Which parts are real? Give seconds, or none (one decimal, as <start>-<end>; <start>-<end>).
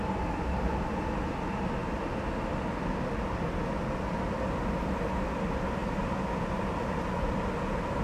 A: 0.0-8.0